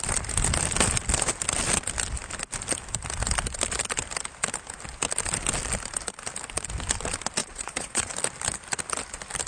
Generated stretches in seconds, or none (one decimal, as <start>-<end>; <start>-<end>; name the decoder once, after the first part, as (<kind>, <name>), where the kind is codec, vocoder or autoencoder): 7.4-8.1 (vocoder, Vocos)

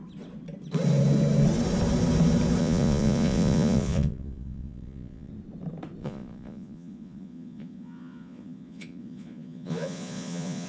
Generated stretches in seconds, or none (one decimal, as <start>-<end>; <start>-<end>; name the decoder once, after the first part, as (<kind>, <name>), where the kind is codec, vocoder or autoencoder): 2.6-5.3 (vocoder, Vocos); 6.0-10.7

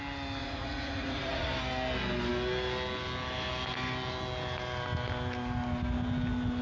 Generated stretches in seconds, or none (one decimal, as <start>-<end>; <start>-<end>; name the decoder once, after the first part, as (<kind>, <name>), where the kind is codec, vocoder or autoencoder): 0.4-1.5 (vocoder, Vocos)